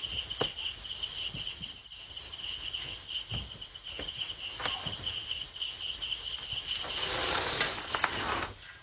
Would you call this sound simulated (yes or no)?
no